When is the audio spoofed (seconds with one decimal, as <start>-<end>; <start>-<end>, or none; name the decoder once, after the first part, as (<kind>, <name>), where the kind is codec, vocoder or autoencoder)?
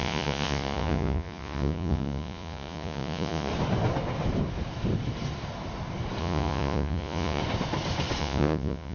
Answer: 0.0-3.5 (vocoder, Vocos); 6.2-7.4; 8.2-8.9